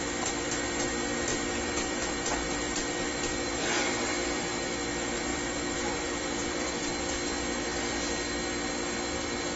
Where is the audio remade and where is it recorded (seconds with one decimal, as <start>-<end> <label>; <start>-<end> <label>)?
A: 0.0-1.3 recorded; 1.3-4.6 remade; 4.6-5.3 recorded; 5.3-6.8 remade; 6.8-9.6 recorded